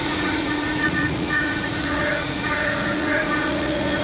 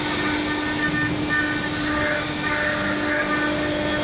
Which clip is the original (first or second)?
second